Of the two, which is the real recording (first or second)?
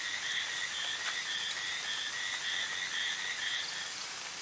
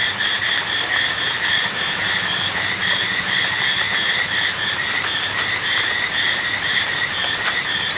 first